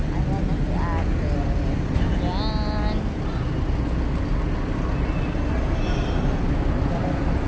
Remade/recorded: recorded